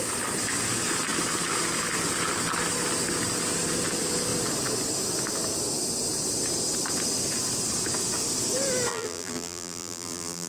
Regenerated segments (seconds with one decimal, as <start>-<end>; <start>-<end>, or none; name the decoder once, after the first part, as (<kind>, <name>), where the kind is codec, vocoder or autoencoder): 8.9-10.5 (vocoder, BigVGAN v2)